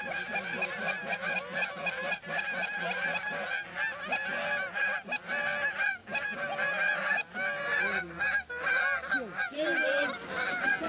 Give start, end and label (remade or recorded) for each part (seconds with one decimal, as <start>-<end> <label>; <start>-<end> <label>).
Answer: 0.0-10.9 recorded